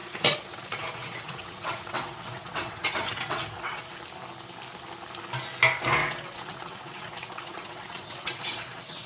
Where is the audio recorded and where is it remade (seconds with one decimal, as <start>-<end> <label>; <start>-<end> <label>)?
0.0-3.8 remade; 3.8-6.0 recorded; 6.0-9.1 remade